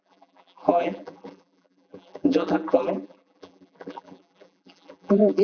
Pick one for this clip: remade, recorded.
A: remade